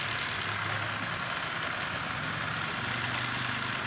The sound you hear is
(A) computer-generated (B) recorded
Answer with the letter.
B